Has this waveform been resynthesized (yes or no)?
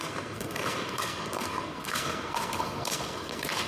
yes